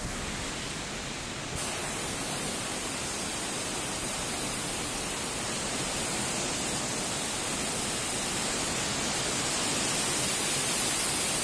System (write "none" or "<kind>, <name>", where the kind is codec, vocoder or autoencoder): none